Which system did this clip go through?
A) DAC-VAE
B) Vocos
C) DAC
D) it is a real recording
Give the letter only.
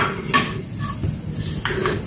D